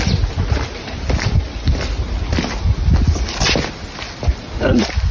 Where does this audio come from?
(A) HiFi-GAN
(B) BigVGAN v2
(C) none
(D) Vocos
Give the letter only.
C